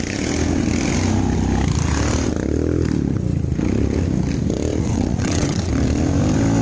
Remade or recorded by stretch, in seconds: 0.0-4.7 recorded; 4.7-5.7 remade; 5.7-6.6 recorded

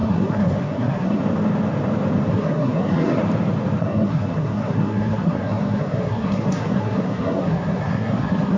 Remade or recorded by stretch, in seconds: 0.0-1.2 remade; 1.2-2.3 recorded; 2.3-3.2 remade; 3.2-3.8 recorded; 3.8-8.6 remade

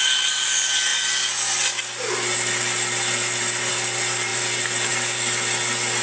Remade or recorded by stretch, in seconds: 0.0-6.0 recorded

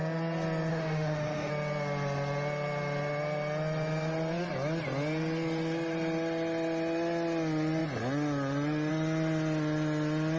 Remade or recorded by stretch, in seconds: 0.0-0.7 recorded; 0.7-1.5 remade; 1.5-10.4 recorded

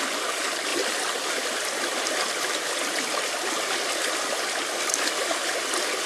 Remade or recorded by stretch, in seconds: 0.0-6.1 recorded